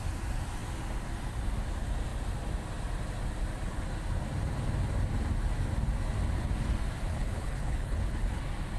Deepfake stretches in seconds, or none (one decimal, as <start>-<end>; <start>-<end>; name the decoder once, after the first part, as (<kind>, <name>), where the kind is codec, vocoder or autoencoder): 7.1-8.4 (codec, HILCodec)